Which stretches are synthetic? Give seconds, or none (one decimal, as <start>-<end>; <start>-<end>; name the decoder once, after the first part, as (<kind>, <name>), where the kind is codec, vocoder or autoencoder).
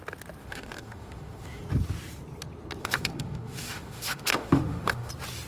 0.4-1.6 (autoencoder, DAC-VAE); 2.8-5.1